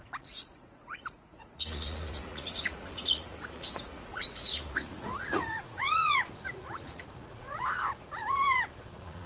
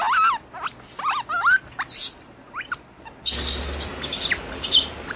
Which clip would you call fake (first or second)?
first